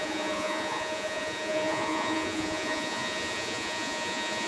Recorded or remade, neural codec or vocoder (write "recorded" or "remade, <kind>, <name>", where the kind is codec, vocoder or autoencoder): remade, vocoder, Vocos